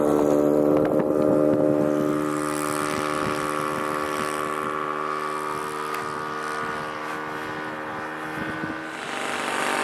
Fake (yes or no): no